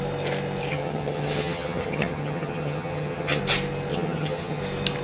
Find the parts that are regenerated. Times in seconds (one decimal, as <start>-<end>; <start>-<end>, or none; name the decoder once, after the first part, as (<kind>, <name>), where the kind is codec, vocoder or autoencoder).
0.7-3.4 (vocoder, HiFi-GAN); 3.9-4.6